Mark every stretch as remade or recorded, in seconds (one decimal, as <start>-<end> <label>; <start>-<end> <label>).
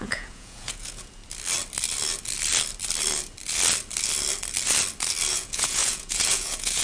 0.0-1.2 remade; 1.2-5.3 recorded; 5.3-6.8 remade